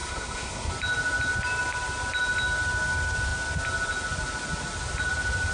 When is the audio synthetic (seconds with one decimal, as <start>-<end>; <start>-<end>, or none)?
0.0-0.7